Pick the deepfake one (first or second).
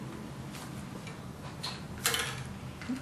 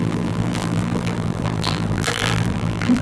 second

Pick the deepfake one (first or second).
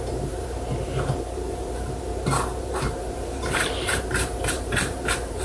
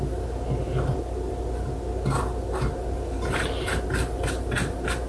first